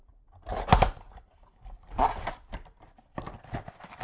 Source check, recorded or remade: recorded